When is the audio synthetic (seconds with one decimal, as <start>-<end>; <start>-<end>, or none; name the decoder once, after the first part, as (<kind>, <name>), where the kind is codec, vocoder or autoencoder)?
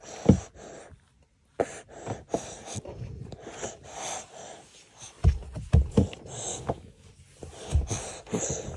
6.5-7.1 (codec, DAC)